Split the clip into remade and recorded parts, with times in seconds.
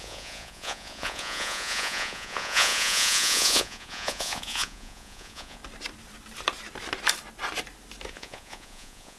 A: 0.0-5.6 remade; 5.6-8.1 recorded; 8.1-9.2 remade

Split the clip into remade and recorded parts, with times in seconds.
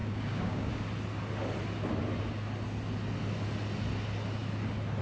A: 0.0-0.7 remade; 0.7-5.0 recorded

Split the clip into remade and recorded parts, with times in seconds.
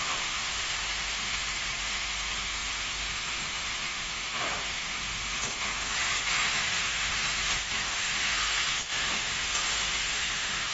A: 0.0-10.7 remade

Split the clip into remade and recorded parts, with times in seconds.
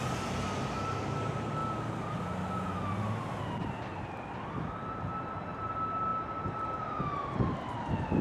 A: 0.0-8.2 recorded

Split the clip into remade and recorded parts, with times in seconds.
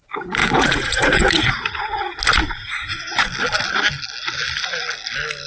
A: 0.0-0.4 recorded; 0.4-2.2 remade; 2.2-2.6 recorded; 2.6-3.2 remade; 3.2-5.5 recorded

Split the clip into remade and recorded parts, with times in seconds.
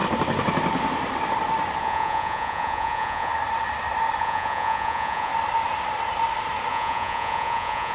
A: 0.0-1.8 recorded; 1.8-3.3 remade; 3.3-4.2 recorded; 4.2-5.3 remade; 5.3-6.7 recorded; 6.7-7.9 remade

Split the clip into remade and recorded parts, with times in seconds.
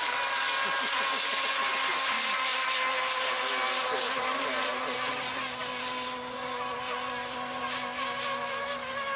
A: 0.0-9.2 recorded